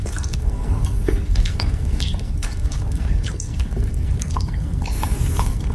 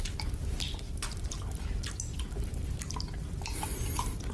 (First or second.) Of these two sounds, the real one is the second